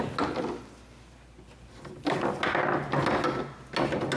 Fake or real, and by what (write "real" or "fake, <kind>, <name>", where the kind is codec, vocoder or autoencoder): real